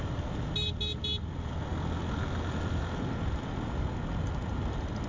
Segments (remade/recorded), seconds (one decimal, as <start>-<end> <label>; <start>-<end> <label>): 0.0-5.1 recorded